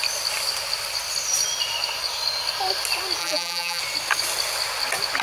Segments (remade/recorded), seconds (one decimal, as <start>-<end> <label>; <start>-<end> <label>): 0.0-3.2 recorded; 3.2-3.8 remade; 3.8-5.2 recorded